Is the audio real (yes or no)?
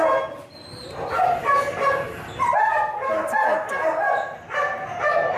yes